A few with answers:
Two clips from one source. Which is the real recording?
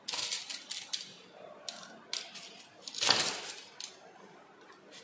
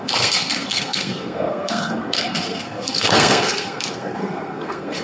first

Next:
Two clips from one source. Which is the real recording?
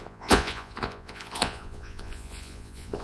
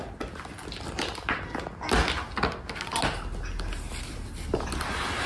second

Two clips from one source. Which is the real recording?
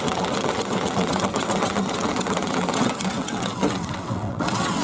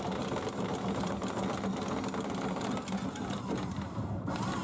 second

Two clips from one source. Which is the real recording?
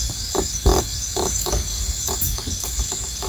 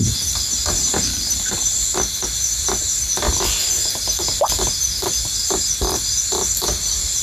second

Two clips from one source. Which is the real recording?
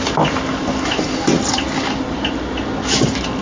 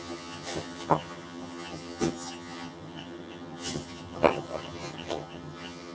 first